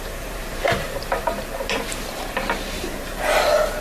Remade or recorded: remade